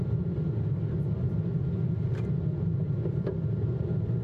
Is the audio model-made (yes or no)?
no